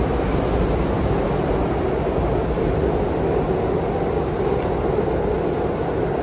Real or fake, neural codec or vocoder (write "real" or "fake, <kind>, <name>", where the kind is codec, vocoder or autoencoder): real